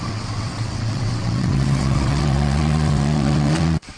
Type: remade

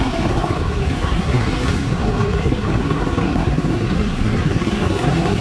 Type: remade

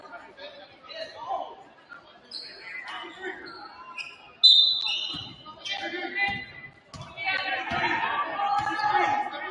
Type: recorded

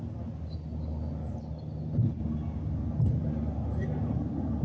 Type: recorded